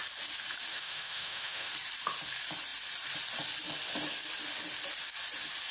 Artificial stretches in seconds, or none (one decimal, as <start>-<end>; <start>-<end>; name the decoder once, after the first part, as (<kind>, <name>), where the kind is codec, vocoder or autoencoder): 0.7-1.7 (autoencoder, DAC-VAE)